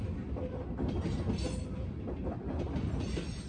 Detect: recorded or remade recorded